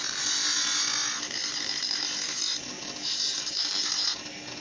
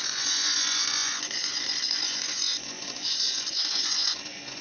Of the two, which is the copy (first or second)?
second